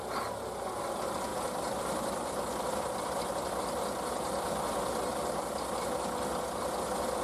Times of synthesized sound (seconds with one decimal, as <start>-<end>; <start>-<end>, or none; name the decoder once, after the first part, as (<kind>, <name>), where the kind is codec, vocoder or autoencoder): none